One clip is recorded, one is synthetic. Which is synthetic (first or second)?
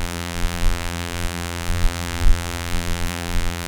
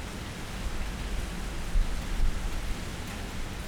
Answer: first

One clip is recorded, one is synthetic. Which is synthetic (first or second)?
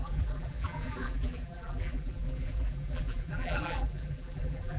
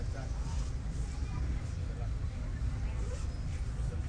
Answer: first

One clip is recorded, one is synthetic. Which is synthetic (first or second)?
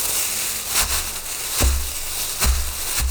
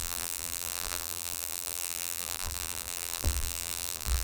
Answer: second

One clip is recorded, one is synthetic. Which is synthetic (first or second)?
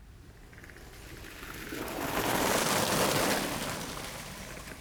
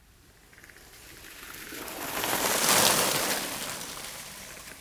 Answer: second